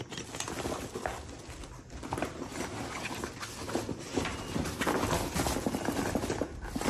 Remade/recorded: recorded